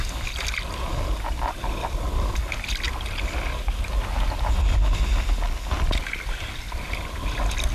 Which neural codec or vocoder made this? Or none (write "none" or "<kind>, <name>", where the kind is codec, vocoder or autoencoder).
none